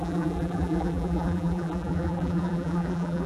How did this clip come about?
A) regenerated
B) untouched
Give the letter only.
A